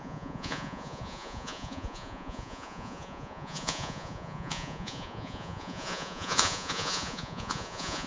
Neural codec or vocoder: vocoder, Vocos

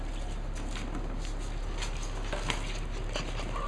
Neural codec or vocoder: none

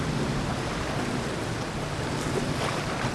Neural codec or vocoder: none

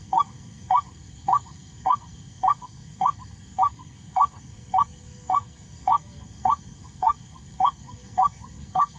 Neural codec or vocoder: codec, SNAC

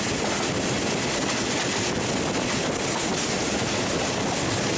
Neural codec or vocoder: none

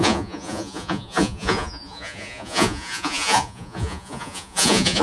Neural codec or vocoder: vocoder, Vocos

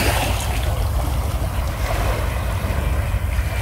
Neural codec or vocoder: none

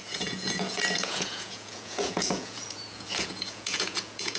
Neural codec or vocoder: vocoder, Vocos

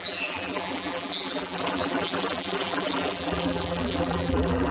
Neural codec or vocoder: vocoder, BigVGAN v2